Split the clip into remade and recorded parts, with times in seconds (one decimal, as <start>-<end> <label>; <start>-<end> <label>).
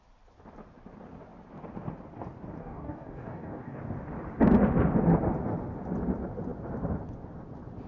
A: 0.0-2.6 recorded; 2.6-3.8 remade; 3.8-7.9 recorded